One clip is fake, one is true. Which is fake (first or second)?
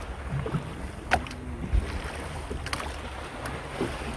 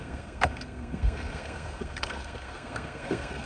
second